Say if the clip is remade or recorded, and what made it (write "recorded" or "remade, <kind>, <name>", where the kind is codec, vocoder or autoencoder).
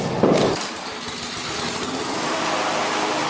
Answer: remade, vocoder, BigVGAN v2